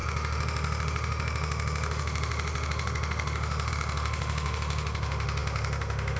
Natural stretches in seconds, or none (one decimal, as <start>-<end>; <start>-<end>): none